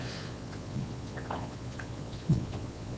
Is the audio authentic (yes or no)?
no